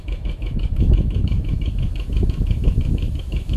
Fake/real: fake